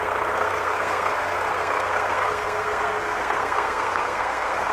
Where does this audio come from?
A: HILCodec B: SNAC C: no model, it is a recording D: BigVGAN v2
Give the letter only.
B